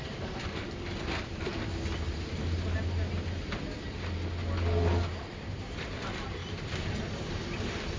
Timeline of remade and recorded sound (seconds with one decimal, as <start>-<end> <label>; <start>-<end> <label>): 0.0-1.5 remade; 1.5-5.8 recorded; 5.8-6.4 remade; 6.4-8.0 recorded